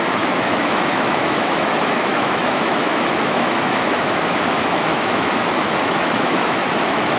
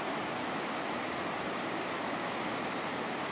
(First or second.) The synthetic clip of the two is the first